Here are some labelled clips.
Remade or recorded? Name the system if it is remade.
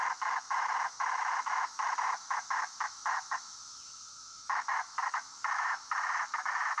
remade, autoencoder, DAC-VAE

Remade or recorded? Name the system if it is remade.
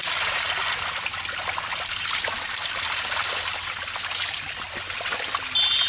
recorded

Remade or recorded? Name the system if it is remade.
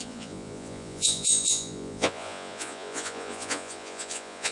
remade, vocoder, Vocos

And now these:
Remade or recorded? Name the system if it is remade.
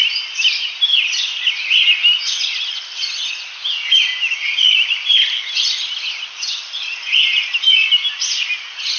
recorded